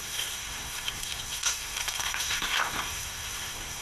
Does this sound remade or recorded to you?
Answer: remade